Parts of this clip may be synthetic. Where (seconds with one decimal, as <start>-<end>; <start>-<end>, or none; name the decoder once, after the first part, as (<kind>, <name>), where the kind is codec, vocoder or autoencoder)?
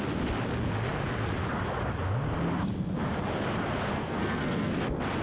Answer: 3.9-4.7 (codec, SNAC)